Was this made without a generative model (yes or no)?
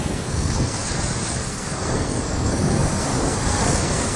no